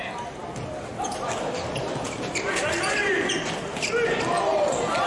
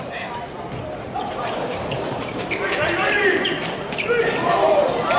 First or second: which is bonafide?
first